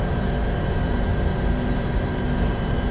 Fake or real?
fake